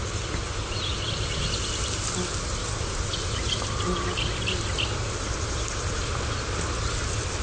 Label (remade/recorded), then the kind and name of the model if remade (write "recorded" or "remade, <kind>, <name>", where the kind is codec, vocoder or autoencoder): recorded